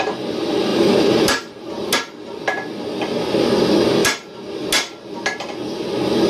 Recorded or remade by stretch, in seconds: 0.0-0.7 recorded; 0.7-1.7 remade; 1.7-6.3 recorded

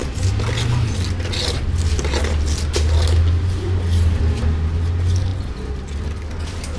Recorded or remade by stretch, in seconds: 0.0-6.8 recorded

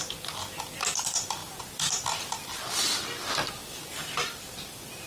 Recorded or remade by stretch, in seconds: 0.0-5.1 remade

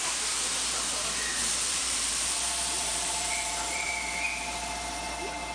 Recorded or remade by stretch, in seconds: 0.0-1.4 recorded; 1.4-3.9 remade; 3.9-5.5 recorded

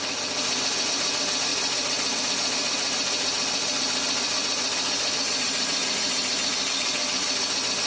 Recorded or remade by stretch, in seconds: 0.0-1.5 recorded; 1.5-2.2 remade; 2.2-7.9 recorded

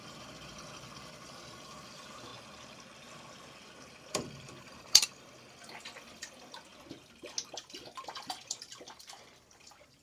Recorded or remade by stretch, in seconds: 0.0-2.3 remade; 2.3-4.1 recorded; 4.1-6.7 remade; 6.7-7.6 recorded; 7.6-10.0 remade